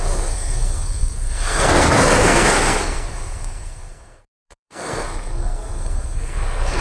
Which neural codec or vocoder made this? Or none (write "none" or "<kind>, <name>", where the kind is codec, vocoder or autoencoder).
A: codec, SNAC